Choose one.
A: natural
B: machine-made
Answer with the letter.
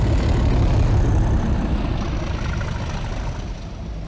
A